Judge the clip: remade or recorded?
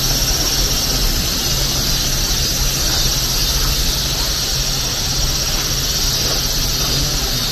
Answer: recorded